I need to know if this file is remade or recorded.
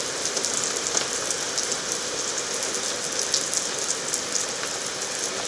recorded